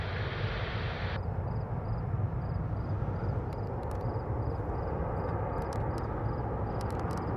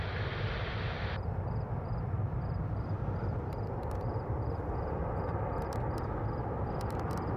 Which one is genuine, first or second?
first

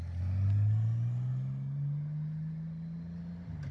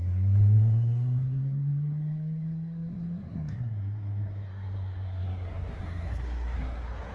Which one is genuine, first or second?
first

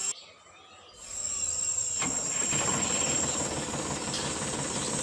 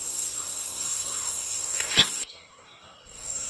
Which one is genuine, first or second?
first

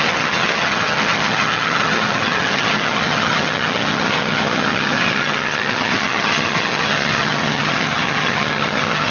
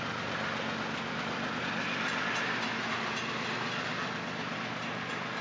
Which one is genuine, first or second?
second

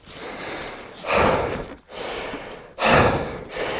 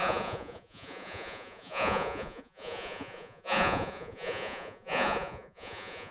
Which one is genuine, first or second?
first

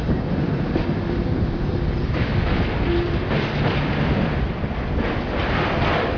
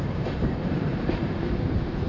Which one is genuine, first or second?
first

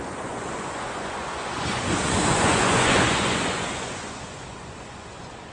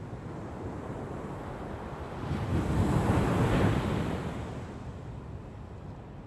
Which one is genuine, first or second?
second